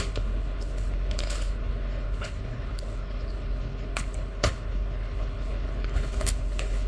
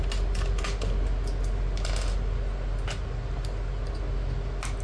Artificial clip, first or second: first